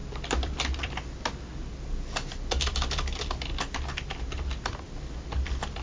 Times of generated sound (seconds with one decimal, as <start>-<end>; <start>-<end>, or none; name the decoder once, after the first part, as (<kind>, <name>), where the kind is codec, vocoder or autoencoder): none